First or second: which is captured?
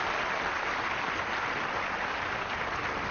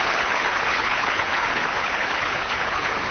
first